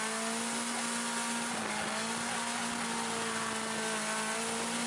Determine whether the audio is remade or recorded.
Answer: recorded